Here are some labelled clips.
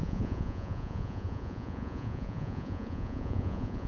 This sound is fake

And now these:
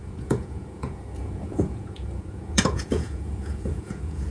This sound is fake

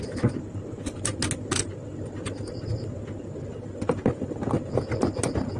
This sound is real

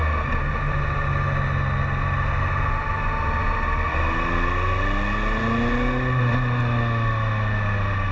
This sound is real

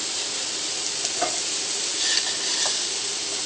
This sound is real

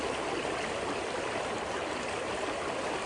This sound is real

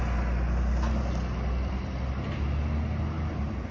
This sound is real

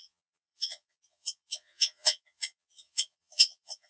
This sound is fake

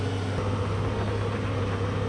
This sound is real